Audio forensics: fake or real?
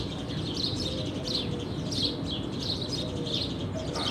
fake